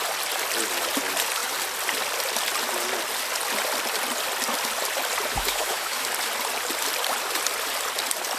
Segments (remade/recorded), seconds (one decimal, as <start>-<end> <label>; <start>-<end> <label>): 0.0-5.3 recorded; 5.3-6.1 remade; 6.1-8.4 recorded